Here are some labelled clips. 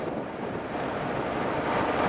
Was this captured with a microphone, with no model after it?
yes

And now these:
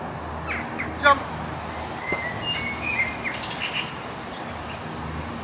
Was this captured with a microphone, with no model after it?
yes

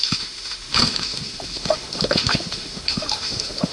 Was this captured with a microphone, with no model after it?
no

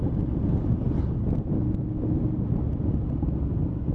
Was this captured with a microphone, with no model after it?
yes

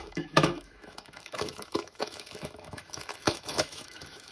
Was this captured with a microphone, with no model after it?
no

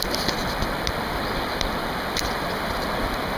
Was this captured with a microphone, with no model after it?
no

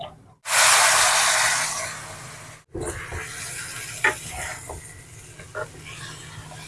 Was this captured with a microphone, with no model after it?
yes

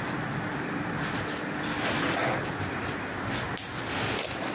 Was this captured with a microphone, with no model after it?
yes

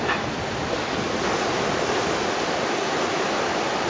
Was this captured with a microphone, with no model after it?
yes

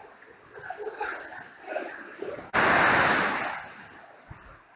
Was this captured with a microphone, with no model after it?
yes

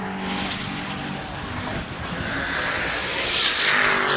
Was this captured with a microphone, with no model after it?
yes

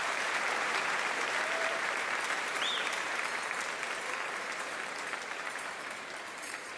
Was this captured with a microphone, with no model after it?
no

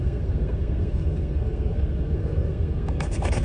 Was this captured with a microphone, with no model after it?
no